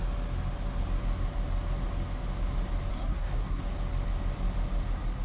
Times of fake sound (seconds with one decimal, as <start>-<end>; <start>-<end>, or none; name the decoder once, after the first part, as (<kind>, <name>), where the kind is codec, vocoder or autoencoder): 2.9-3.6 (codec, SNAC)